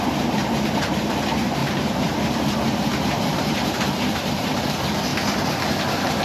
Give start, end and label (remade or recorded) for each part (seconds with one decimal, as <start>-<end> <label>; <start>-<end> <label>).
0.0-1.6 recorded; 1.6-4.6 remade; 4.6-6.2 recorded